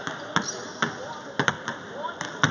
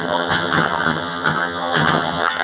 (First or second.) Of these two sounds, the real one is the first